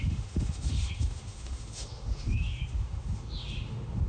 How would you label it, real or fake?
fake